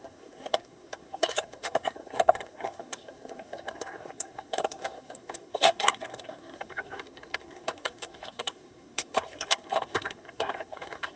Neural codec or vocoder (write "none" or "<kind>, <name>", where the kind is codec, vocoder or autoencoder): codec, SNAC